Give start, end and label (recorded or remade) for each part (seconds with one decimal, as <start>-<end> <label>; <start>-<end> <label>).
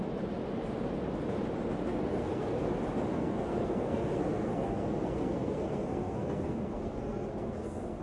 0.0-1.9 recorded; 1.9-2.7 remade; 2.7-3.1 recorded; 3.1-8.0 remade